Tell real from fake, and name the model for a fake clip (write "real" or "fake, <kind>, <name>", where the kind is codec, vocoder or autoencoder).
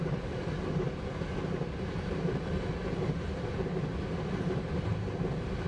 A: real